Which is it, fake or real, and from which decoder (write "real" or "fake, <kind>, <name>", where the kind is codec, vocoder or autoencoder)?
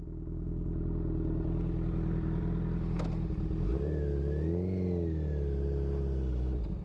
real